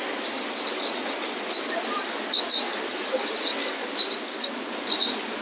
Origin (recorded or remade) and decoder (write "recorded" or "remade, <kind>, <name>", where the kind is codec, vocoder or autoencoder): recorded